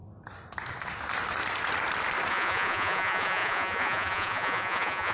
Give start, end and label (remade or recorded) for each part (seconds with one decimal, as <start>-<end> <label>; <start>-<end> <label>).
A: 0.0-2.3 recorded; 2.3-5.1 remade